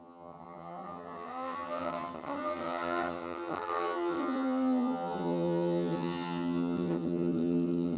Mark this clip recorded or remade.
remade